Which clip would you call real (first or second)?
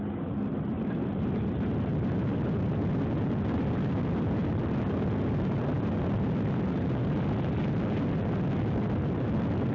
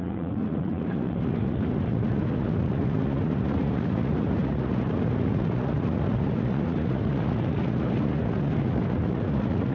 first